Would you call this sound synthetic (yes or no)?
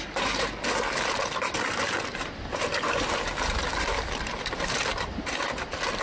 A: no